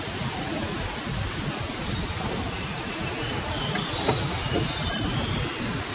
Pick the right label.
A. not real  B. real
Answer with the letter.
B